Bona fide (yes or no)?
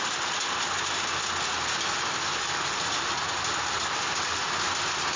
yes